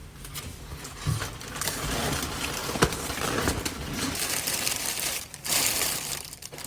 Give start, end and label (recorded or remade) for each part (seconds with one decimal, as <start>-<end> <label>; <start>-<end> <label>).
0.0-2.2 remade; 2.2-2.6 recorded; 2.6-4.9 remade; 4.9-6.7 recorded